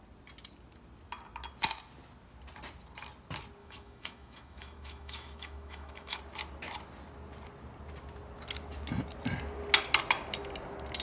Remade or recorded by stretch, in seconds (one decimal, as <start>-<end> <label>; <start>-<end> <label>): 0.0-3.6 recorded; 3.6-6.2 remade; 6.2-11.0 recorded